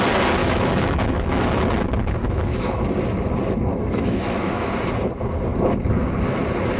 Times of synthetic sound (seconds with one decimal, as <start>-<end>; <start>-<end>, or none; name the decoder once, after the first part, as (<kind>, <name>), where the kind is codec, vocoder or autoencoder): 0.4-1.6 (autoencoder, DAC-VAE); 2.2-2.8; 3.7-4.7